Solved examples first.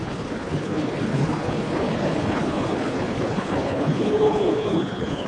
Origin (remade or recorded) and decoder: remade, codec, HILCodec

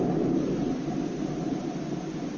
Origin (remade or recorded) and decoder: remade, vocoder, BigVGAN v2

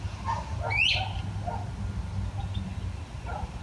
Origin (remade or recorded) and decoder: recorded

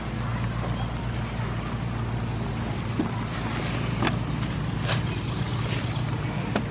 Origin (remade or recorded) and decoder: recorded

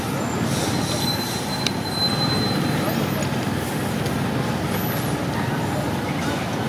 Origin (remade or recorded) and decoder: recorded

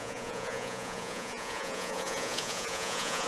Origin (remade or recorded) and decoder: remade, vocoder, Vocos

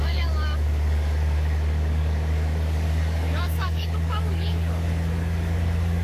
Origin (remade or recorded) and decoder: remade, codec, DAC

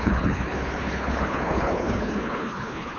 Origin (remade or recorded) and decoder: remade, codec, HILCodec